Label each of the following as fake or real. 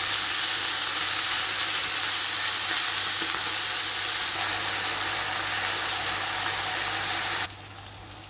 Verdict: real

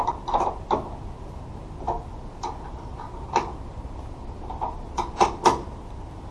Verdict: real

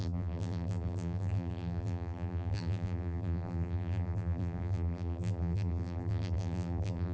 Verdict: fake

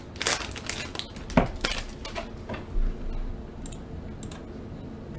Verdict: real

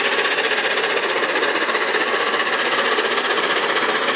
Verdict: real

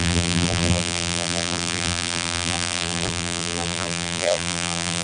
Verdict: fake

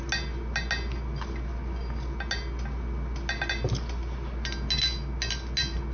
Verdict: real